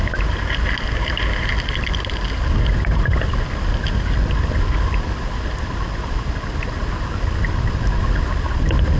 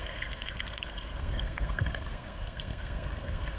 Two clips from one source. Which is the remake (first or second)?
second